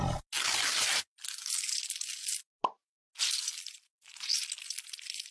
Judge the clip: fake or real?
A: real